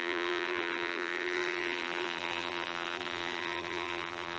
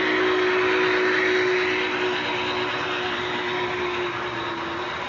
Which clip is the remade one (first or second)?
first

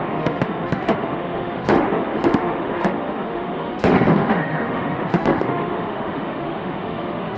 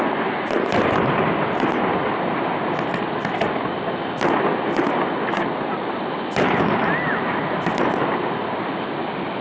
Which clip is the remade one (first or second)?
first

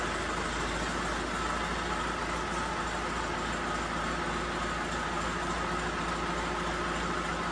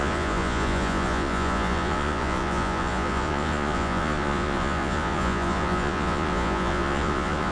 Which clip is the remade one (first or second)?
second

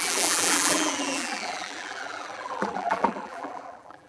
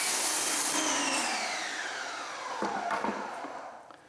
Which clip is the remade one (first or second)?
first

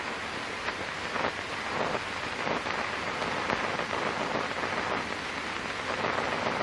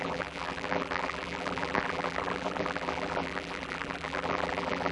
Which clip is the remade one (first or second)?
second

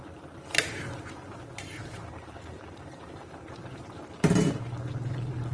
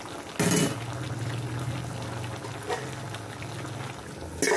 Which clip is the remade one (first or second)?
first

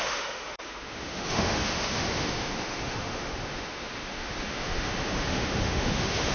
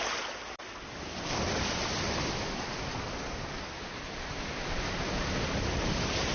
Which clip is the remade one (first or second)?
first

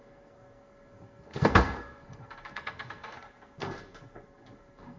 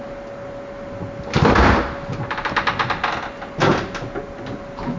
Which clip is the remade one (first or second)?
first